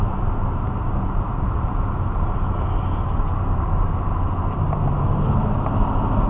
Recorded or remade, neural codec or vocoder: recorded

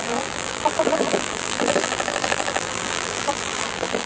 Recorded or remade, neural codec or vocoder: remade, vocoder, BigVGAN v2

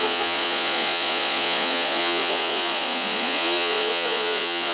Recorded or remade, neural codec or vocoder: remade, vocoder, Vocos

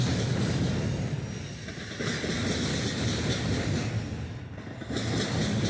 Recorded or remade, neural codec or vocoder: recorded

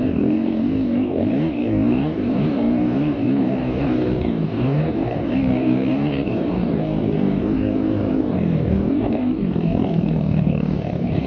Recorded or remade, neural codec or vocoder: remade, codec, DAC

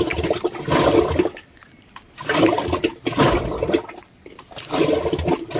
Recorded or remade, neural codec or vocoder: recorded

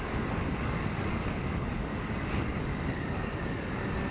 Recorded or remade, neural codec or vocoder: remade, codec, DAC